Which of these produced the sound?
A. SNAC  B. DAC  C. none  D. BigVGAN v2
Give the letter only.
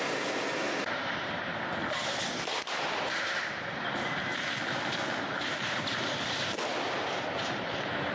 D